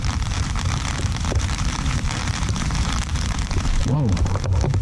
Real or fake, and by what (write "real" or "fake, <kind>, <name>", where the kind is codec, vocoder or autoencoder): fake, vocoder, BigVGAN v2